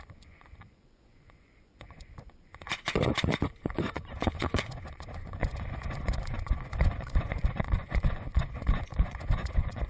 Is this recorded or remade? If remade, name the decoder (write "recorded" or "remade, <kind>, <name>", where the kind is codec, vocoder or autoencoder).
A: remade, vocoder, Vocos